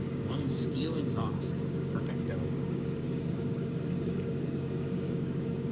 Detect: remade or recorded remade